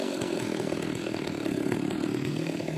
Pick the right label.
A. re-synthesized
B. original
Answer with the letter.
A